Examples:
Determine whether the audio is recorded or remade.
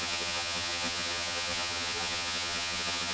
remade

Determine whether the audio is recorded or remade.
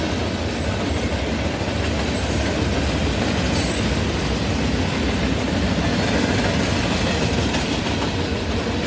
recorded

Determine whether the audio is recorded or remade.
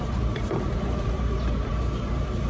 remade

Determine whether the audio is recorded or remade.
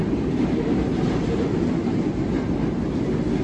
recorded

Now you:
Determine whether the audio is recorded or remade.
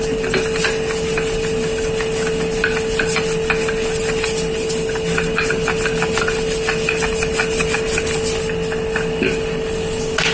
recorded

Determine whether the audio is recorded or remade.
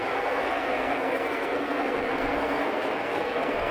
remade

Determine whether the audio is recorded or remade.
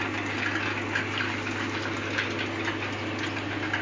recorded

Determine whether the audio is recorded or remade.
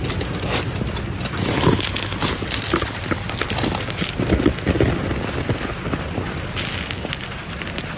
recorded